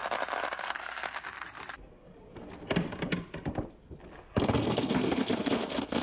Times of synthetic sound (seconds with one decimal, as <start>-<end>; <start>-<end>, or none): 0.6-1.0; 4.6-6.0